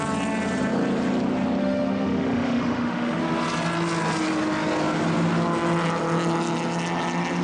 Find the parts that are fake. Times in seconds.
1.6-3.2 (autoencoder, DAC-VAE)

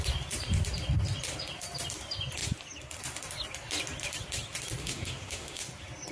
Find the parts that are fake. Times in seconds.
4.8-5.6 (autoencoder, DAC-VAE)

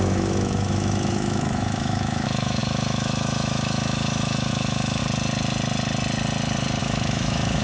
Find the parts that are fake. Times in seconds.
0.0-5.0 (autoencoder, DAC-VAE); 6.8-7.6

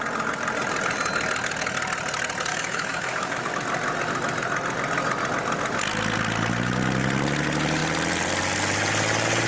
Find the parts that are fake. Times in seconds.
2.5-3.5 (autoencoder, DAC-VAE)